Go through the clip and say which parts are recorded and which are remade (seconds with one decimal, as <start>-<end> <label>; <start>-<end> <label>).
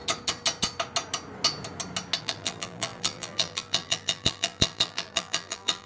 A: 0.0-2.2 recorded; 2.2-5.9 remade